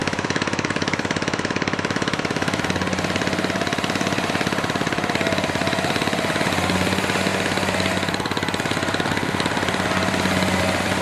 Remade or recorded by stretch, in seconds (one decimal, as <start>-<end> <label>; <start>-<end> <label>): 0.0-2.6 remade; 2.6-11.0 recorded